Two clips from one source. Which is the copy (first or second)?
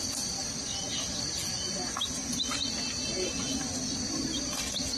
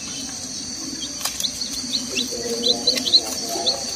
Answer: second